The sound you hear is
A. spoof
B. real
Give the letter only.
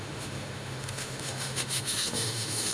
A